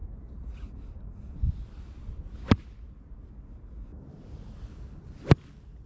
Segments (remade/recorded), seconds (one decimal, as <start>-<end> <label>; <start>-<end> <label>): 0.0-5.9 recorded

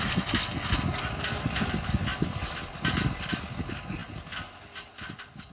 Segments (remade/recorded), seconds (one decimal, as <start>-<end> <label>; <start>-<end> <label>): 0.0-2.1 recorded; 2.1-2.8 remade; 2.8-4.0 recorded; 4.0-4.9 remade; 4.9-5.5 recorded

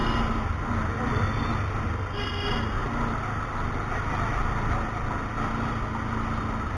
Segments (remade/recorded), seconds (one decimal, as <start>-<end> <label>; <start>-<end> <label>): 0.0-6.8 recorded